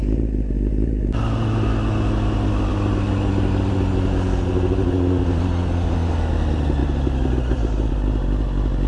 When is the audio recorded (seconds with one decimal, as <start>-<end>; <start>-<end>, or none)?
0.0-8.9